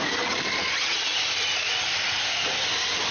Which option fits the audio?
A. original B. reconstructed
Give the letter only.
B